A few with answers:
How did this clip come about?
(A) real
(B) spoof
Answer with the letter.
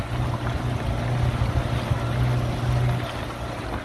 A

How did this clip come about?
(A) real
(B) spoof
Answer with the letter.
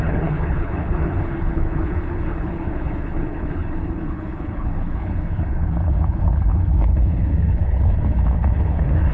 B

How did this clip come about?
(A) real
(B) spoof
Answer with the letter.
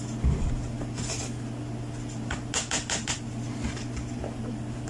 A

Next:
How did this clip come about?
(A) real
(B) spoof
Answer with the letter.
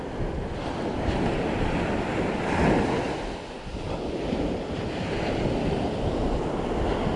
A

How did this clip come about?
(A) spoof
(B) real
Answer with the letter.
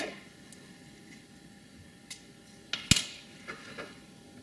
B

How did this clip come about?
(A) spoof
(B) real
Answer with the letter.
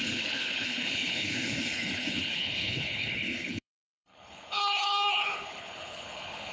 A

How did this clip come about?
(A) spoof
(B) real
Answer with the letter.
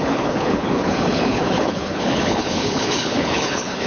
A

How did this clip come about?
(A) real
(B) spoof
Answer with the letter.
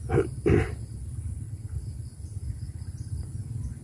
A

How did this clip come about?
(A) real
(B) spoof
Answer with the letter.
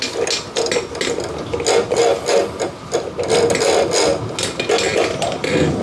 A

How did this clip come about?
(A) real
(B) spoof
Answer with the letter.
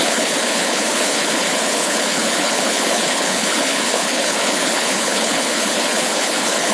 B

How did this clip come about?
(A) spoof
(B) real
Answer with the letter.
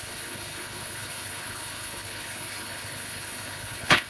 A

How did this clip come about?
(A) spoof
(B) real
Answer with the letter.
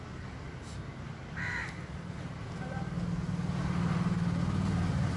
B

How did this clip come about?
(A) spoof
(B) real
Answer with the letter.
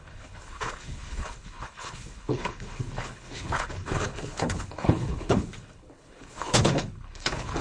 A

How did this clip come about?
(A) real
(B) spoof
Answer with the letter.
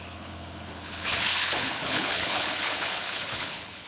B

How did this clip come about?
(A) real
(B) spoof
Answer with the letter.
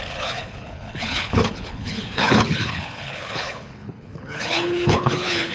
B